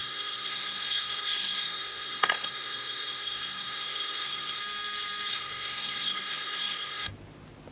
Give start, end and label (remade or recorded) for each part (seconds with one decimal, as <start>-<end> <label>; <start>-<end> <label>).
0.0-4.6 remade; 4.6-5.3 recorded; 5.3-7.1 remade; 7.1-7.7 recorded